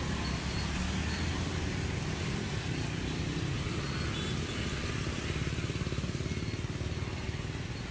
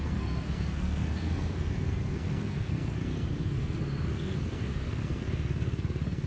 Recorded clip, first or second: first